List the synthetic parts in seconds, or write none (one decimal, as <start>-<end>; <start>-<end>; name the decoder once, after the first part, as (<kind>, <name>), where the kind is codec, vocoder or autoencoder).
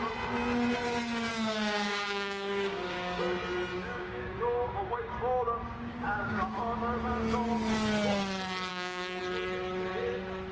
1.3-3.2 (codec, DAC); 3.7-6.6; 8.7-9.2